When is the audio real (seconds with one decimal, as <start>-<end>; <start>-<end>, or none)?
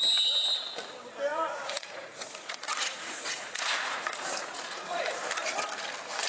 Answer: 0.0-1.3; 5.1-6.3